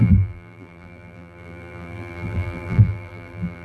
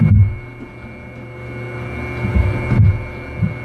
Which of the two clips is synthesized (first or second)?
first